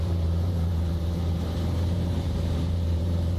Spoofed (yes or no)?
yes